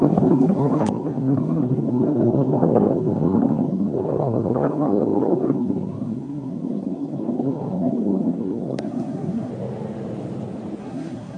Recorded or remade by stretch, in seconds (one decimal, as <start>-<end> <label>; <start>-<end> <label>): 0.0-9.5 remade; 9.5-10.8 recorded; 10.8-11.4 remade